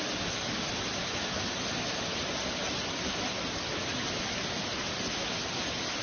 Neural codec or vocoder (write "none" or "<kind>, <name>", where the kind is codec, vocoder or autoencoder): none